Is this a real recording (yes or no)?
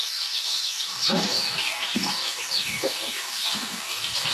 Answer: no